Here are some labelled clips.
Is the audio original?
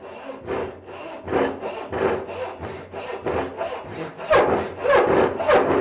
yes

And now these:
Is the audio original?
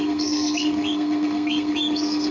no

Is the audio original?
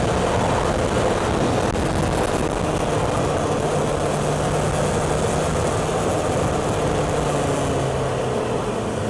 yes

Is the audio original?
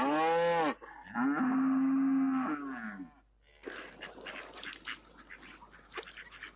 yes